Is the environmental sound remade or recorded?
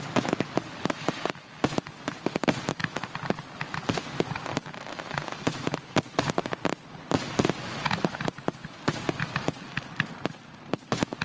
recorded